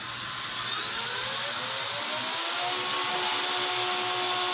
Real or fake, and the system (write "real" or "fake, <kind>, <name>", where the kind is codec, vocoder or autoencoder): real